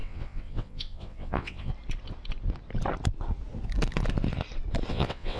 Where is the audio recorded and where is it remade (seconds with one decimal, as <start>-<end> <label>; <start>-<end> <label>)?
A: 0.0-1.7 remade; 1.7-4.9 recorded; 4.9-5.4 remade